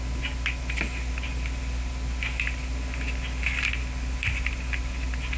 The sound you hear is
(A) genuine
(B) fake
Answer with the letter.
A